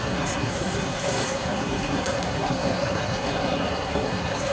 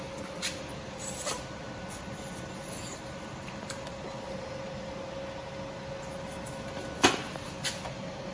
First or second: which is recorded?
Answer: second